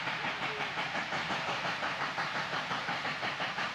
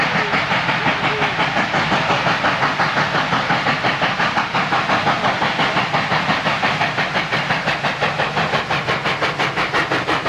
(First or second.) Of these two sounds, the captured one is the second